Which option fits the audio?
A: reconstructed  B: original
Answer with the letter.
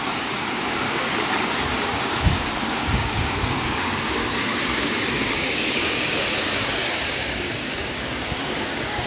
A